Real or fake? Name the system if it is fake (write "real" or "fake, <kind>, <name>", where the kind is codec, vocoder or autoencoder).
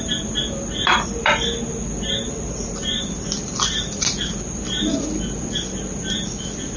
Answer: real